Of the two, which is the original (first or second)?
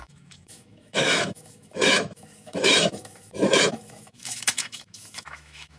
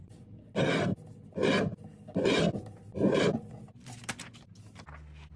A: second